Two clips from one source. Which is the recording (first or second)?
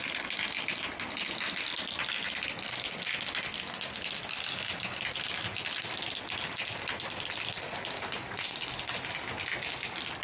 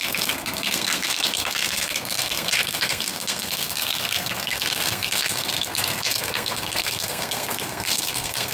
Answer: first